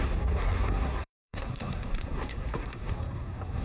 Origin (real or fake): fake